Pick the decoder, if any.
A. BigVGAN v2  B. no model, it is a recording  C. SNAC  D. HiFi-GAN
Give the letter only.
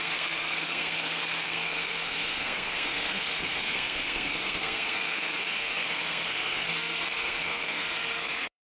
C